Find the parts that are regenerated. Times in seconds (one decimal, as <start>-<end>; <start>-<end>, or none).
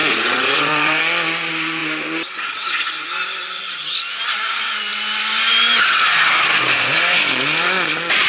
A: 0.0-1.0